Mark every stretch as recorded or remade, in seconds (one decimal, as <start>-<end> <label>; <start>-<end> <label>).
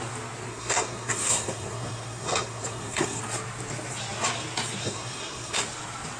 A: 0.0-0.5 recorded; 0.5-3.2 remade; 3.2-4.8 recorded; 4.8-5.6 remade; 5.6-6.2 recorded